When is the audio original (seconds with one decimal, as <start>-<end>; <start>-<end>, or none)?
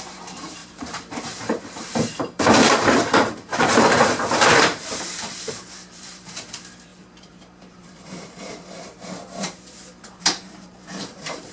none